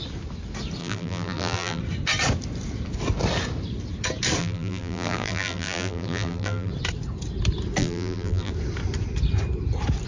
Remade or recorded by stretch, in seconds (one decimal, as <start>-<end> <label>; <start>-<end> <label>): 0.0-0.8 recorded; 0.8-1.8 remade; 1.8-4.4 recorded; 4.4-6.7 remade; 6.7-7.8 recorded; 7.8-8.5 remade; 8.5-10.1 recorded